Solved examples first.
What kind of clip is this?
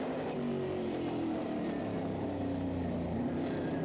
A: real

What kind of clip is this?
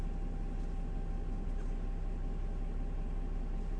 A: real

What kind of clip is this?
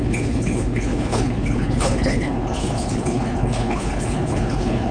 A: fake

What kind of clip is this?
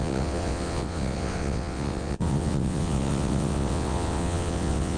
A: fake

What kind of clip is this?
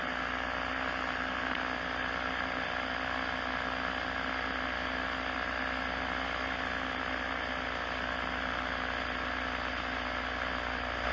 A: real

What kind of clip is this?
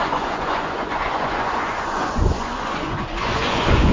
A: fake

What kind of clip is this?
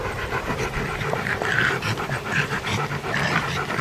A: fake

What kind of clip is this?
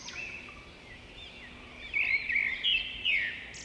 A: real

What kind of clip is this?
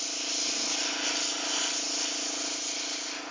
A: real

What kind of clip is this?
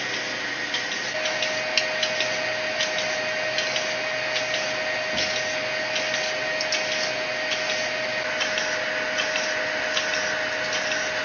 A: real